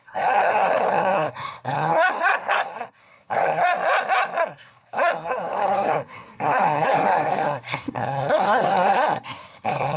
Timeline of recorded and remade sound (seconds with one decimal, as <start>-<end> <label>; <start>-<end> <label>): 0.0-3.7 remade; 3.7-4.4 recorded; 4.4-10.0 remade